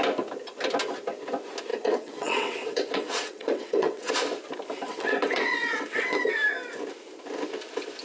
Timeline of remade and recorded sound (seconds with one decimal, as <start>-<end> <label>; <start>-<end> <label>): 0.0-1.7 recorded; 1.7-4.1 remade; 4.1-4.9 recorded; 4.9-6.2 remade; 6.2-8.0 recorded